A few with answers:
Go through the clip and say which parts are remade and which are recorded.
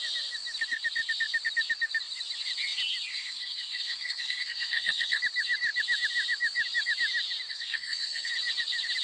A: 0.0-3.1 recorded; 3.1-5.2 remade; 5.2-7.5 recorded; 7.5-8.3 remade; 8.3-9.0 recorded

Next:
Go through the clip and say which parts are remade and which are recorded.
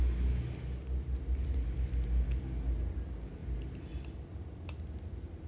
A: 0.0-5.5 recorded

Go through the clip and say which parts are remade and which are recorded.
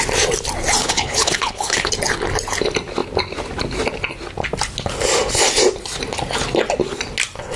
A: 0.0-0.8 recorded; 0.8-1.9 remade; 1.9-7.6 recorded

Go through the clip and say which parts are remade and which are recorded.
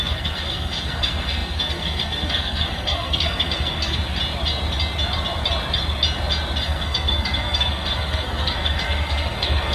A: 0.0-4.0 remade; 4.0-6.6 recorded; 6.6-9.7 remade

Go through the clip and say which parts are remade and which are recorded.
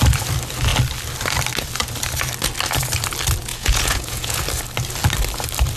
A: 0.0-3.5 recorded; 3.5-4.4 remade; 4.4-5.8 recorded